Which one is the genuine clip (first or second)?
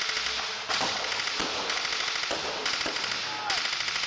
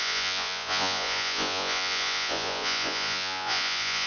first